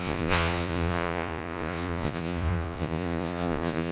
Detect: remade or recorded remade